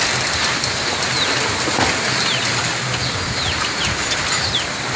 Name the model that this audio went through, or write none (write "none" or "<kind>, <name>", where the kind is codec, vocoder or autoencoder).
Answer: none